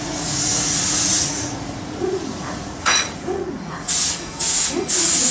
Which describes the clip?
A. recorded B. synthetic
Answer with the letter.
B